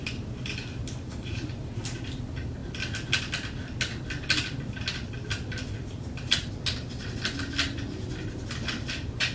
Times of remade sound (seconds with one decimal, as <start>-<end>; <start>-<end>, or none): none